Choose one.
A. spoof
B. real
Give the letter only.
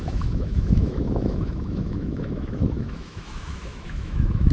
A